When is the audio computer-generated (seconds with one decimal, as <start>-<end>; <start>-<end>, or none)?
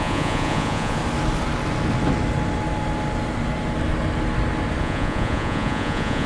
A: 0.0-1.0; 4.8-6.3